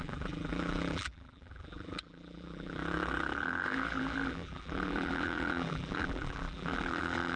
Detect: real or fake fake